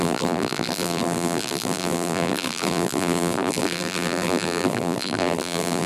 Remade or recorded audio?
remade